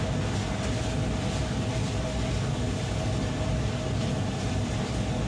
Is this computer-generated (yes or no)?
no